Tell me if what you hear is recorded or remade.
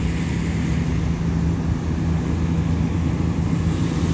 recorded